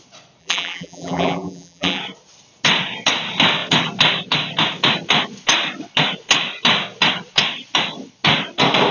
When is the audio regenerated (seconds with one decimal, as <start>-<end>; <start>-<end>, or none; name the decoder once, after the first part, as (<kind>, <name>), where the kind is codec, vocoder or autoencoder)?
0.4-2.0 (vocoder, BigVGAN v2)